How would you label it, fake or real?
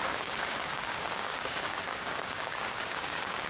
fake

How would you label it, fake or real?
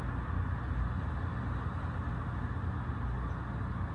real